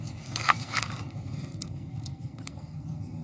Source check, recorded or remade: remade